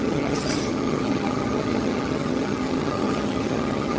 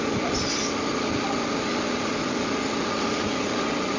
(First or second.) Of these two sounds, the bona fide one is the second